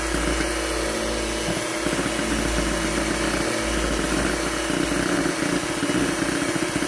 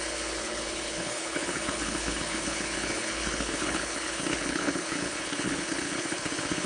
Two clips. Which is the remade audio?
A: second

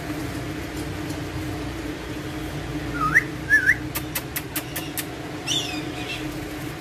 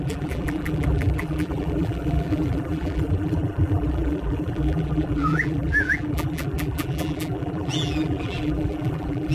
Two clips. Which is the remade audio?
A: second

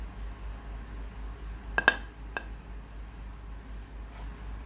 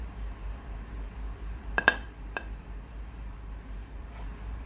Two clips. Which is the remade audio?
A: second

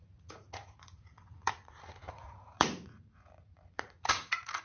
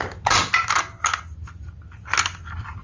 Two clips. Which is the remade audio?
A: first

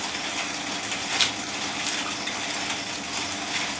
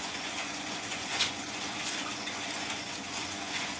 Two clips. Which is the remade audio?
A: second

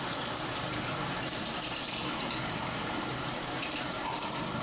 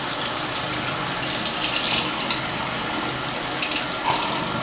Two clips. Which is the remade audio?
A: first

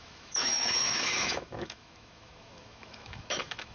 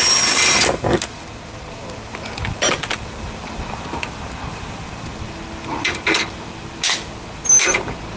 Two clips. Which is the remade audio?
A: first